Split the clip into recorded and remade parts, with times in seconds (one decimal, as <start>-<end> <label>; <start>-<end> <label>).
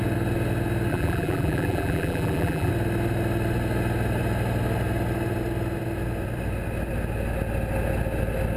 0.0-0.9 recorded; 0.9-2.7 remade; 2.7-8.6 recorded